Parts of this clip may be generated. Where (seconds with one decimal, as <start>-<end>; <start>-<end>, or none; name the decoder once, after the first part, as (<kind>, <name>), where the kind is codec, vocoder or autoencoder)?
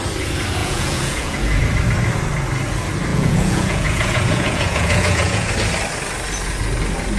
0.6-1.6 (vocoder, Vocos); 3.1-5.5